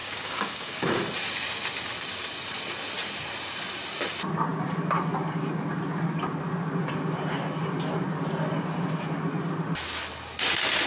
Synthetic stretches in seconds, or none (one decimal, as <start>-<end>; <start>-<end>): 0.0-1.0

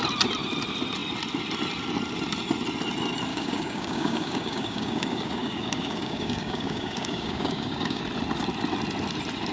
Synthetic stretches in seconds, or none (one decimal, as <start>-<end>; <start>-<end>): 3.3-8.0

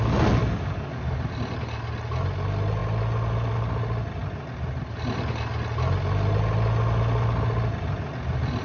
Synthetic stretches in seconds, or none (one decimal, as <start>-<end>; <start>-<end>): 0.4-1.2

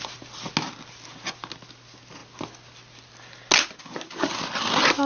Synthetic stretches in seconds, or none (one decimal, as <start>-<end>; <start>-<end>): none

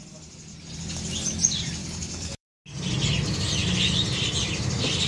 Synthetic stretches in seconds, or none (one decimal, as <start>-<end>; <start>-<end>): 1.8-2.5